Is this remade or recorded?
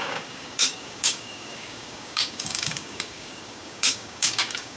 remade